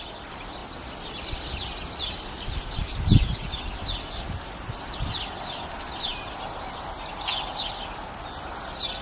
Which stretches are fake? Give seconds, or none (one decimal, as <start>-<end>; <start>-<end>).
none